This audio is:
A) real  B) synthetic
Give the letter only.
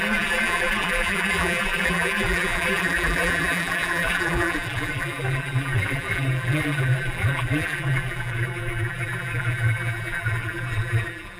B